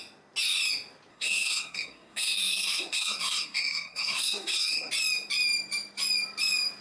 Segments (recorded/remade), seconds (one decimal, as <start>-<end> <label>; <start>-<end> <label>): 0.0-1.1 recorded; 1.1-4.9 remade; 4.9-6.8 recorded